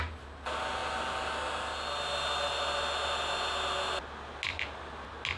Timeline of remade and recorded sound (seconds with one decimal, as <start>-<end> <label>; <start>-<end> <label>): 0.0-5.4 recorded